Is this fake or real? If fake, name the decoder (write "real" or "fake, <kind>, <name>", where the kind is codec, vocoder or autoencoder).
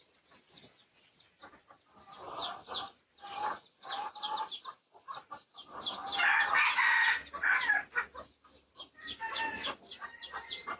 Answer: real